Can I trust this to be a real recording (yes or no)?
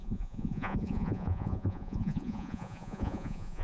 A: no